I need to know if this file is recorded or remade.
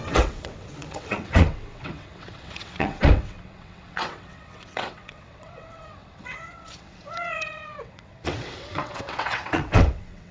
remade